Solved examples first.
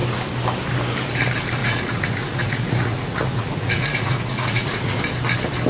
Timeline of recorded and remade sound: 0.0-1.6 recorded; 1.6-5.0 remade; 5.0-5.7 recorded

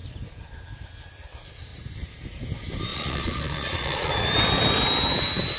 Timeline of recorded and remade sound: 0.0-2.9 recorded; 2.9-4.1 remade; 4.1-5.6 recorded

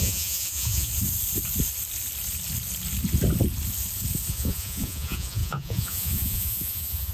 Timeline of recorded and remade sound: 0.0-0.9 remade; 0.9-4.3 recorded; 4.3-7.1 remade

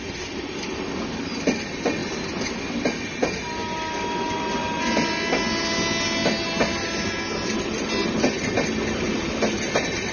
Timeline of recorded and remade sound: 0.0-10.1 recorded

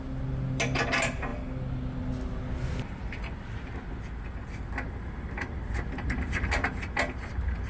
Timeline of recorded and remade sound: 0.0-7.7 recorded